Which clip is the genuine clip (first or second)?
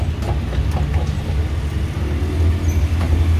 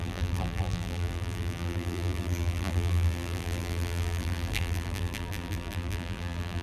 first